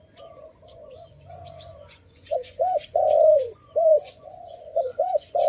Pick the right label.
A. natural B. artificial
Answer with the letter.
B